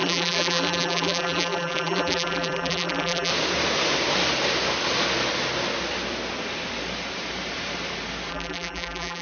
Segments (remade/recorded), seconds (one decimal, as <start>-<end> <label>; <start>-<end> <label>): 0.0-3.3 remade; 3.3-8.3 recorded; 8.3-9.2 remade